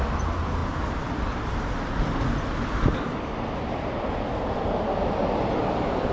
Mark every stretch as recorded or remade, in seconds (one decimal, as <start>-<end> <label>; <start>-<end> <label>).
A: 0.0-6.1 remade